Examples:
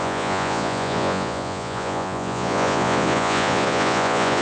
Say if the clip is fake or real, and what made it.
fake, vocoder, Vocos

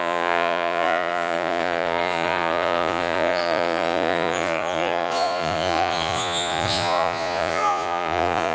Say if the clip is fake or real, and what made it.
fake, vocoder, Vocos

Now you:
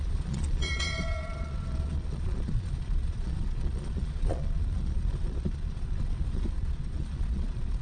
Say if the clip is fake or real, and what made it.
fake, vocoder, Vocos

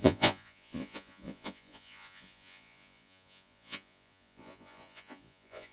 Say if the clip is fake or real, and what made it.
fake, vocoder, Vocos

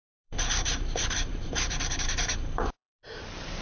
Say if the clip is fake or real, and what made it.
fake, vocoder, BigVGAN v2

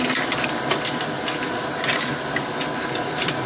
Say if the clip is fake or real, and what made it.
real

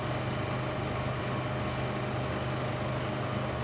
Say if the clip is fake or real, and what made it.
real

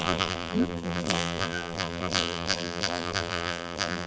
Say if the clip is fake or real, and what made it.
fake, vocoder, BigVGAN v2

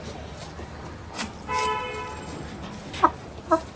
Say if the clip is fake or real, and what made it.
real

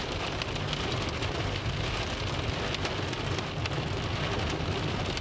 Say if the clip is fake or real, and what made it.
real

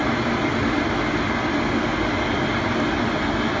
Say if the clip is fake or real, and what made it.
real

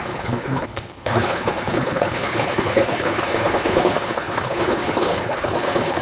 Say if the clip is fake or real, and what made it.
fake, codec, HILCodec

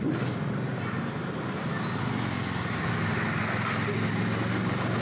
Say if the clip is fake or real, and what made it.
real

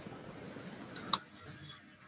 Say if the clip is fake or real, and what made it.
real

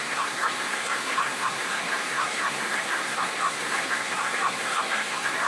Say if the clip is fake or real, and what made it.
fake, codec, SNAC